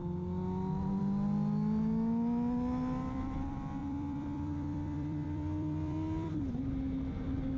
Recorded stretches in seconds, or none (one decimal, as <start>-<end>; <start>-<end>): 0.0-3.8; 6.7-7.6